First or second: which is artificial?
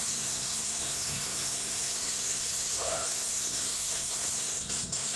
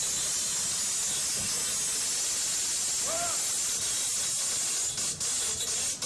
first